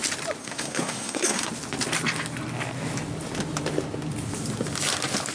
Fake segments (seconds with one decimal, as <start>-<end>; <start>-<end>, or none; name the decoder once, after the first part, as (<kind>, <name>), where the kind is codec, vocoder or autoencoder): 0.4-1.5 (codec, SNAC)